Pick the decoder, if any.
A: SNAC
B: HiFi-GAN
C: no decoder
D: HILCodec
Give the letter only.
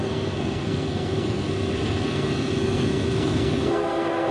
A